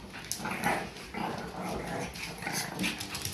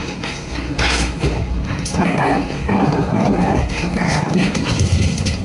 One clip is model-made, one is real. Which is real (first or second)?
first